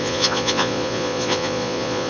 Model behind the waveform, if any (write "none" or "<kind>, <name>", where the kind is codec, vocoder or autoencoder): vocoder, Vocos